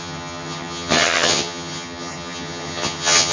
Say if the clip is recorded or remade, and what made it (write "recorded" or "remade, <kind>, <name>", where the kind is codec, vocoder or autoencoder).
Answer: remade, vocoder, HiFi-GAN